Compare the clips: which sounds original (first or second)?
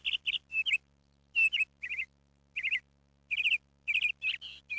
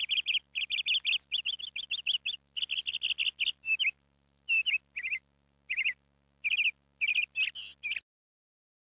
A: second